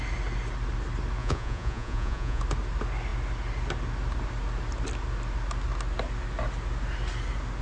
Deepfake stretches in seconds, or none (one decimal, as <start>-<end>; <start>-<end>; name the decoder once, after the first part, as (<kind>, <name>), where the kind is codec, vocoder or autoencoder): 1.2-2.4 (vocoder, Vocos)